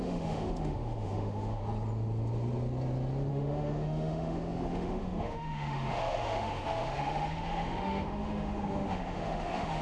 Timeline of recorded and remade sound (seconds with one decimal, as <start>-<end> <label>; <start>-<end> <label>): 0.0-1.6 remade; 1.6-3.3 recorded; 3.3-9.8 remade